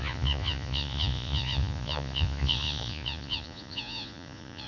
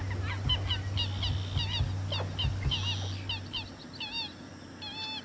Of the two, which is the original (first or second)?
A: second